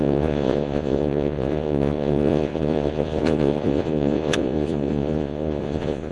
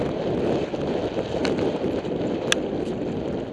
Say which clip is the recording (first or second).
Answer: second